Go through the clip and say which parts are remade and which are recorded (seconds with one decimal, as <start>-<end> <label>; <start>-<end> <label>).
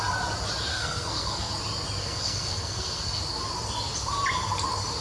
0.0-0.7 recorded; 0.7-1.5 remade; 1.5-2.0 recorded; 2.0-3.2 remade; 3.2-5.0 recorded